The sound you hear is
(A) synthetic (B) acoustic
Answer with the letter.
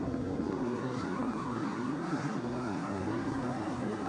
A